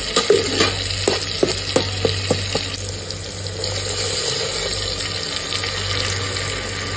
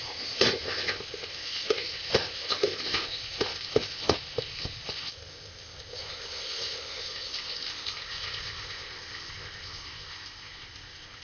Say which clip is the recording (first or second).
first